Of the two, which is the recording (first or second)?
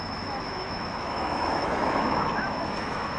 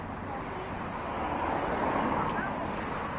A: second